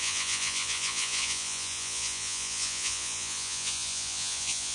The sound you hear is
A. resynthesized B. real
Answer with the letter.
A